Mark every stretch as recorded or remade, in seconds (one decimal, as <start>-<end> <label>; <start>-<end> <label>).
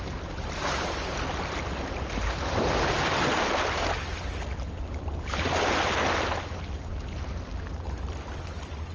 0.0-8.9 recorded